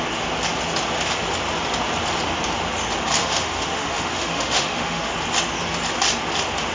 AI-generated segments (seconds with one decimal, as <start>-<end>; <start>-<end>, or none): 3.2-5.1